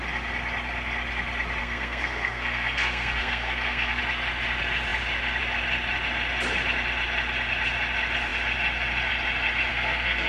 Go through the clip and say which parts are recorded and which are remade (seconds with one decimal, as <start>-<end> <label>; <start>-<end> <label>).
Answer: 0.0-1.6 recorded; 1.6-4.0 remade; 4.0-9.7 recorded; 9.7-10.3 remade